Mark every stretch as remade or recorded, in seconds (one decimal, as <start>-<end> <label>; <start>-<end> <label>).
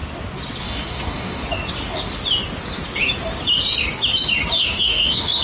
0.0-0.6 recorded; 0.6-1.4 remade; 1.4-4.6 recorded; 4.6-5.4 remade